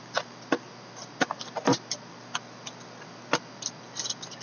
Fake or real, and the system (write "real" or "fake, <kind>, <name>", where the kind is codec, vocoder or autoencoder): real